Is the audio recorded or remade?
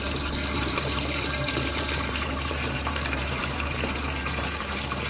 remade